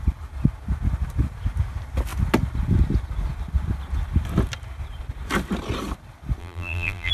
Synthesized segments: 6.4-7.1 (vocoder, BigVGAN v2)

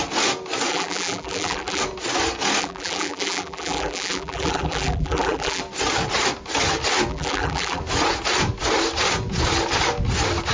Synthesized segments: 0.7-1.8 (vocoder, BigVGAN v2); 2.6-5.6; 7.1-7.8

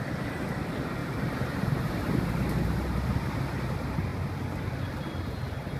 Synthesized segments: 1.0-3.4 (vocoder, BigVGAN v2)